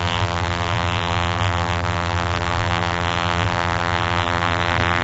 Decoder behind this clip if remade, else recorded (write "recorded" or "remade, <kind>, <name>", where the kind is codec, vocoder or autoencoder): remade, vocoder, BigVGAN v2